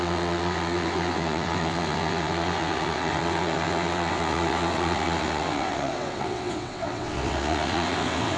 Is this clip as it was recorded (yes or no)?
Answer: no